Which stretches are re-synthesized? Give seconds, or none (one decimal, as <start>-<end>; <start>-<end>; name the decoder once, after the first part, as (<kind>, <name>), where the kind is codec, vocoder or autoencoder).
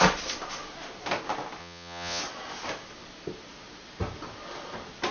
1.6-2.2 (vocoder, Vocos)